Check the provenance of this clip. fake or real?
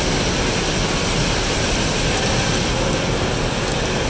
real